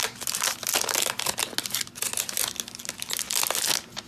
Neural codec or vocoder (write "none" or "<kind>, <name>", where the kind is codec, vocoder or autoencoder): none